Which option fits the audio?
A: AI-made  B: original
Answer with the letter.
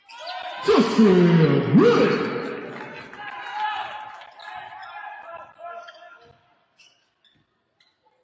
B